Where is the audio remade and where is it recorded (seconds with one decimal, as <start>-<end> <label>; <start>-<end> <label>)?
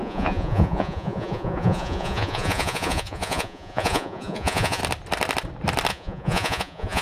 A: 0.0-4.8 remade; 4.8-5.9 recorded; 5.9-7.0 remade